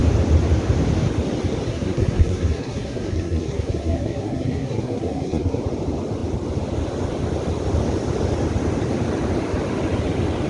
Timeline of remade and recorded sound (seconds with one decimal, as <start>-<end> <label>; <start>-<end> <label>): 0.0-1.7 recorded; 1.7-5.6 remade; 5.6-10.5 recorded